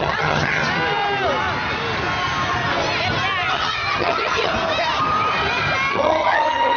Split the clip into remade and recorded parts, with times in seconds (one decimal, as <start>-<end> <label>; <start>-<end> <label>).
0.0-0.6 remade; 0.6-3.5 recorded; 3.5-4.5 remade; 4.5-5.9 recorded; 5.9-6.8 remade